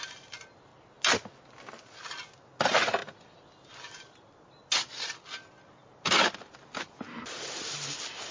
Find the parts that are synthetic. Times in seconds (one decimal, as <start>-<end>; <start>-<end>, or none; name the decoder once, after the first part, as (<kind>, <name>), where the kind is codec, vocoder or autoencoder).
0.0-0.7 (vocoder, BigVGAN v2); 2.2-3.0; 5.3-8.3